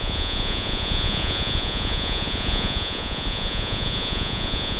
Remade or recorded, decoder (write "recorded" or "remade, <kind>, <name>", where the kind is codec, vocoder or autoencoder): remade, vocoder, Vocos